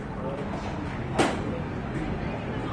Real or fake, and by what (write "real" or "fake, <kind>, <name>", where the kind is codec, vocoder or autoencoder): real